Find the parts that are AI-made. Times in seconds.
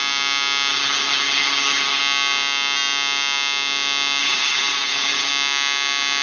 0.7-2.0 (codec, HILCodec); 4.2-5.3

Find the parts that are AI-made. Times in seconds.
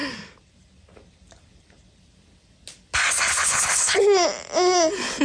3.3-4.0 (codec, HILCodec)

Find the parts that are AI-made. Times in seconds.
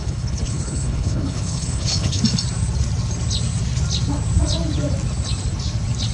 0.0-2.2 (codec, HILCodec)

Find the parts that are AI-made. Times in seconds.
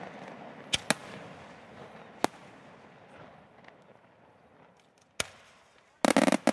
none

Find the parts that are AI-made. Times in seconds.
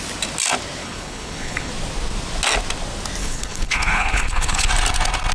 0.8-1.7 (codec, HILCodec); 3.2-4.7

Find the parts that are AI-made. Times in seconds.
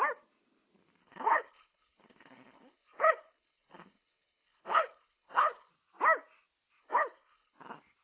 1.0-5.7 (codec, HILCodec); 6.8-7.6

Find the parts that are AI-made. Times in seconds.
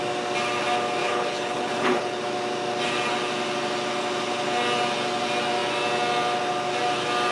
1.0-2.2 (codec, HILCodec)